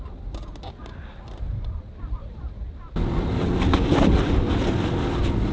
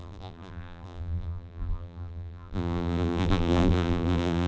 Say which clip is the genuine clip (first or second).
first